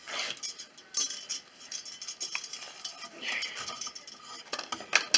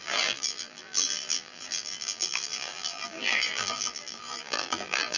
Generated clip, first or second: second